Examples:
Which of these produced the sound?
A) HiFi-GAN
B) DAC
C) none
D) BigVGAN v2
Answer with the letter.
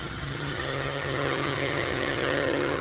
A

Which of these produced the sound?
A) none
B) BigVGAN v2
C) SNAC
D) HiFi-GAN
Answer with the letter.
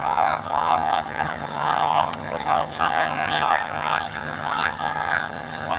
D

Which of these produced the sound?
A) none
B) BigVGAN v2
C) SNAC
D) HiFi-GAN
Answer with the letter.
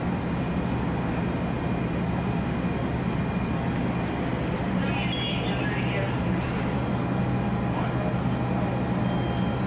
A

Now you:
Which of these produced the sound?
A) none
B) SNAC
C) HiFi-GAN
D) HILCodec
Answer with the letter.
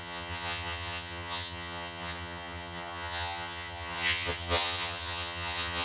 C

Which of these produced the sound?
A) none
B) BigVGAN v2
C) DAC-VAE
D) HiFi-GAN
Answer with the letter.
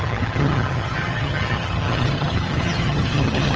D